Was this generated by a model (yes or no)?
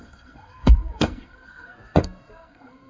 yes